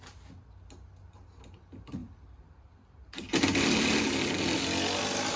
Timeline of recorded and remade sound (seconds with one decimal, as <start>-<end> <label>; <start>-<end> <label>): 0.0-5.4 recorded

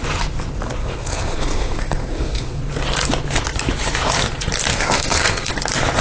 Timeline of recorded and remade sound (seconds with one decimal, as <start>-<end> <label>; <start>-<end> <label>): 0.0-0.8 recorded; 0.8-2.6 remade; 2.6-4.7 recorded; 4.7-5.5 remade; 5.5-6.0 recorded